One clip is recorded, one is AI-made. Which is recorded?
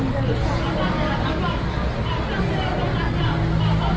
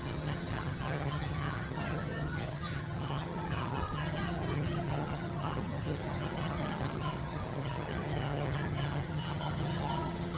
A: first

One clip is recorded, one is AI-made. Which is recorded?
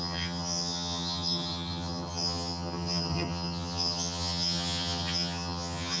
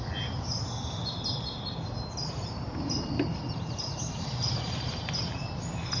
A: second